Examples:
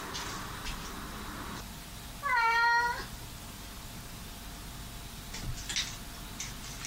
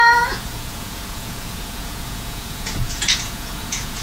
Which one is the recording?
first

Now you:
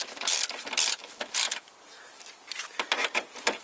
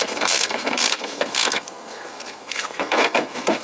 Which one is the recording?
first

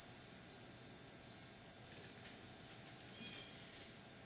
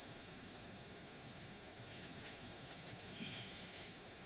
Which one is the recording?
first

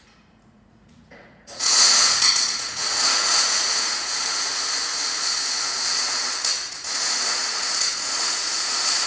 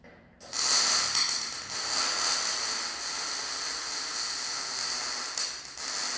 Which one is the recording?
second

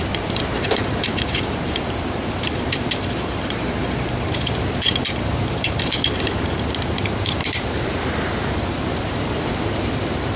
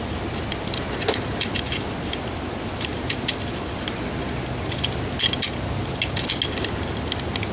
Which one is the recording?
second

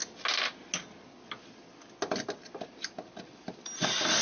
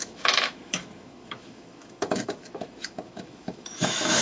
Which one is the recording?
first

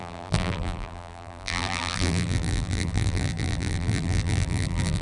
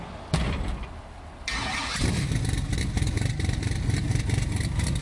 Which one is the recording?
second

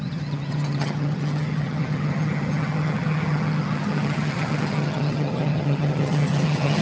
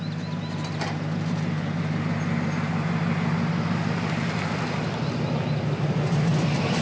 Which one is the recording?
second